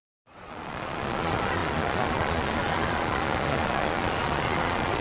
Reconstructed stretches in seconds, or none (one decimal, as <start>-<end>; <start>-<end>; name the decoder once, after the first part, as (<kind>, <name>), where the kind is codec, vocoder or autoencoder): 0.0-5.0 (vocoder, Vocos)